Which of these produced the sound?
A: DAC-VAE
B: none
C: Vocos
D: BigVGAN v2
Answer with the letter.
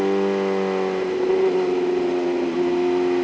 B